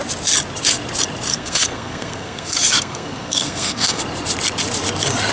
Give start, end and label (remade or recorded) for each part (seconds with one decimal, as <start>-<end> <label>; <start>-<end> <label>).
0.0-1.3 recorded; 1.3-4.0 remade; 4.0-5.3 recorded